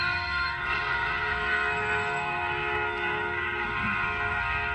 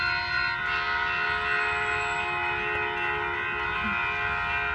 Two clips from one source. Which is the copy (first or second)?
first